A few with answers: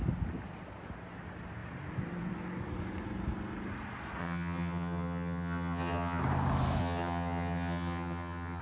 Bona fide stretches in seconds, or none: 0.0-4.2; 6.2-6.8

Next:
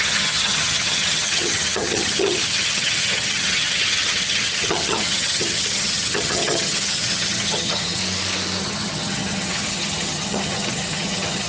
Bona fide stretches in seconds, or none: 8.0-8.6

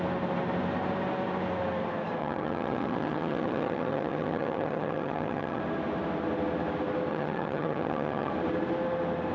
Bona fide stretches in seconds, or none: 0.0-2.2; 5.6-7.1; 8.3-9.3

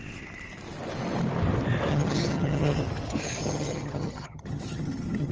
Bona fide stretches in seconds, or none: 0.0-1.9; 2.8-3.4

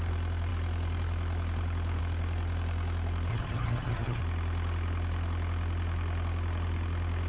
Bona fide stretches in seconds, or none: 0.0-3.3; 4.2-7.3

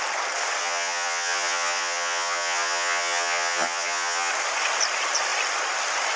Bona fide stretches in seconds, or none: 0.0-0.6; 4.3-6.2

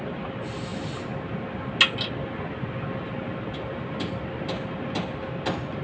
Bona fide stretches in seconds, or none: 0.0-5.8